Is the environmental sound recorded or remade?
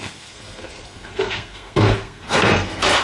remade